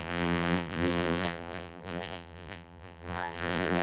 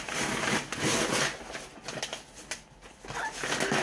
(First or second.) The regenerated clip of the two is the first